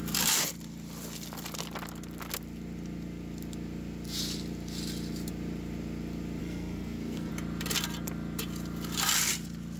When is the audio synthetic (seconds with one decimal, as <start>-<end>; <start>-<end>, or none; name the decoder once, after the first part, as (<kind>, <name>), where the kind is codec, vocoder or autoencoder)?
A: 6.4-7.3 (codec, SNAC)